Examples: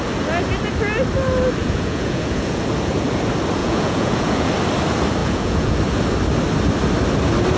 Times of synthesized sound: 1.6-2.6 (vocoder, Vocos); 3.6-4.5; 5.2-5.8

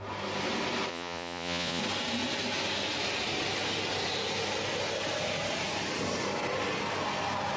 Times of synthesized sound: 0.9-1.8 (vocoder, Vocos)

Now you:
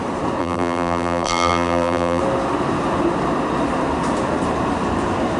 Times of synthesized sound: 0.4-2.2 (vocoder, BigVGAN v2)

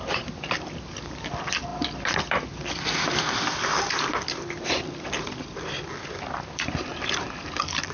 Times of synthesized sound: 1.7-5.9 (vocoder, BigVGAN v2); 6.9-7.9